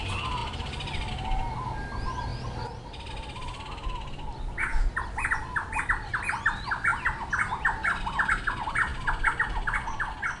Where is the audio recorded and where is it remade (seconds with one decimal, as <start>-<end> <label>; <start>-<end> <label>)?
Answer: 0.0-10.4 recorded